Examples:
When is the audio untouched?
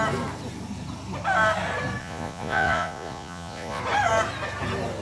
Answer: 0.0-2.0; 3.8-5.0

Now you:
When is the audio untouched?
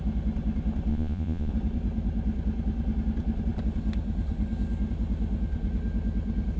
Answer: 0.0-0.9; 1.5-6.6